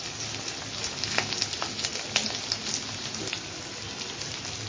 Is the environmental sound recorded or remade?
recorded